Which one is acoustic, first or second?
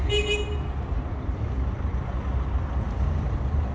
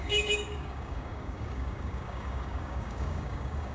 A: first